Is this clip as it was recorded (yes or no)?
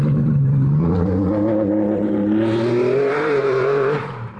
no